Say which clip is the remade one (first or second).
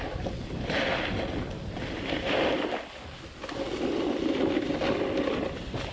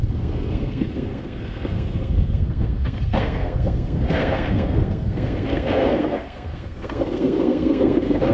second